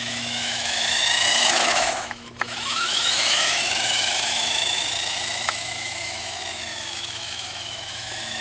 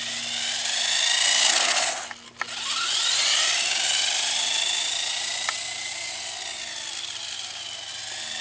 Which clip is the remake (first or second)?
first